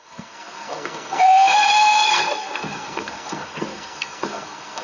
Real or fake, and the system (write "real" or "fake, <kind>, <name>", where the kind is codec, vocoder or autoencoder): fake, codec, SNAC